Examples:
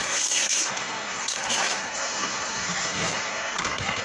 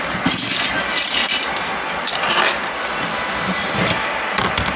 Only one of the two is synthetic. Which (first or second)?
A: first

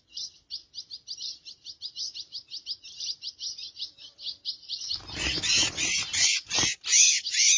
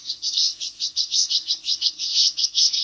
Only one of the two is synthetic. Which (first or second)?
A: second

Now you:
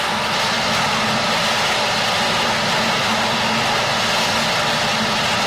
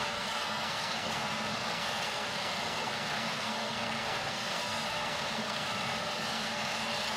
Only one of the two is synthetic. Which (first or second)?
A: second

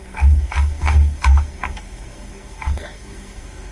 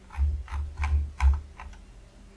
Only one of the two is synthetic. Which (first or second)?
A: first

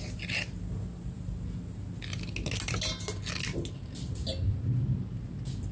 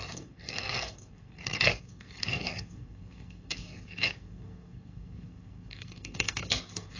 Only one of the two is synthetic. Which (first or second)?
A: second